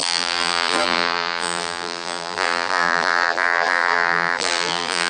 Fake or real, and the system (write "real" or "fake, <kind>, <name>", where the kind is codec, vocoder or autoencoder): fake, vocoder, BigVGAN v2